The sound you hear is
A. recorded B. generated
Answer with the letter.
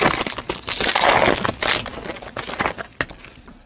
A